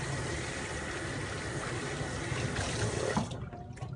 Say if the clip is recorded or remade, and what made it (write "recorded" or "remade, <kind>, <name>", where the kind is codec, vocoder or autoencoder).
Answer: recorded